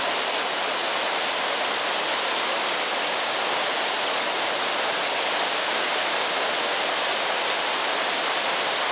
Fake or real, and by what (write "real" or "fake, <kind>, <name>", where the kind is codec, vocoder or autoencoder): real